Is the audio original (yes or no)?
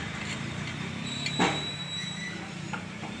no